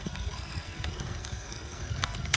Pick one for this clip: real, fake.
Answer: fake